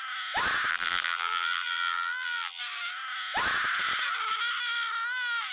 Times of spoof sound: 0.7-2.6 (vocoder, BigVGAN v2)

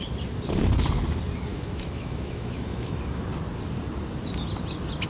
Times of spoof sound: 1.5-2.9 (autoencoder, DAC-VAE)

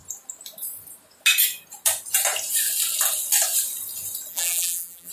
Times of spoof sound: 4.3-5.1 (vocoder, BigVGAN v2)

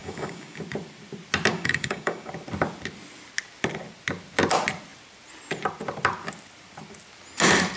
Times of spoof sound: 0.0-0.6 (codec, DAC); 1.5-2.3

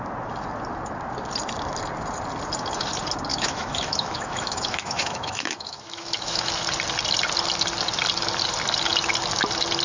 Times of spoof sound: 3.3-6.5 (autoencoder, DAC-VAE)

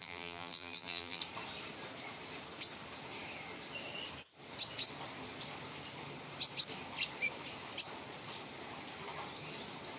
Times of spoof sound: 0.0-1.2 (vocoder, BigVGAN v2)